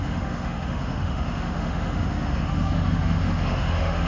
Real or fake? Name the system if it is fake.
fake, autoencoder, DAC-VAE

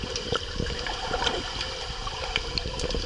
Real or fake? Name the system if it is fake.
real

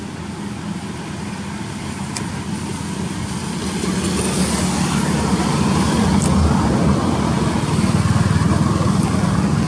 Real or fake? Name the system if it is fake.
real